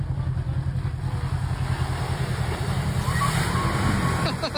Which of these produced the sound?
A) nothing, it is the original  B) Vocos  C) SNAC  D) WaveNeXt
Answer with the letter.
A